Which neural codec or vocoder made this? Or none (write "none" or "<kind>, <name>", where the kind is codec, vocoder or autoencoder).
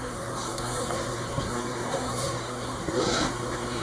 codec, SNAC